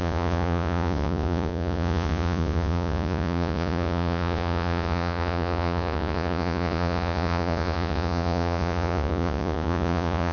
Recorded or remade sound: remade